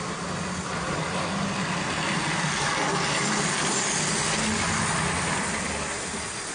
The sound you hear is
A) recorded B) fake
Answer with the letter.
A